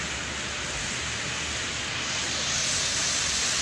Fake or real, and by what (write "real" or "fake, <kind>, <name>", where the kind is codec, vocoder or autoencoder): real